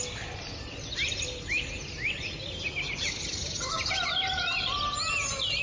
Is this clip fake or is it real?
real